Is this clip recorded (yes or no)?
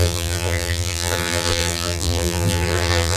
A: no